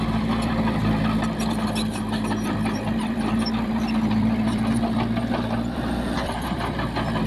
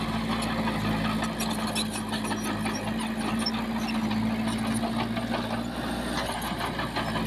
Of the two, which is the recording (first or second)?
second